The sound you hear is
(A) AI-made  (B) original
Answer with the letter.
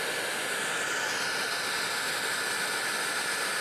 B